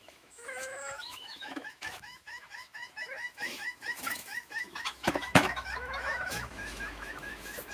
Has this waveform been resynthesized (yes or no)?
yes